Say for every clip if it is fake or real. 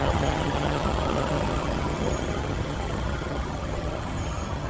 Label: fake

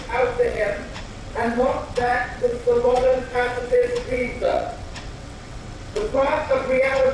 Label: fake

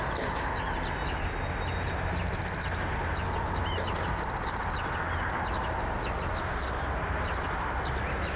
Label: real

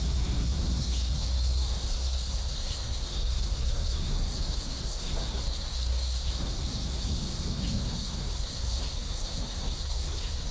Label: fake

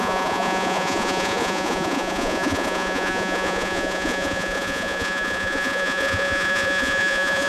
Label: fake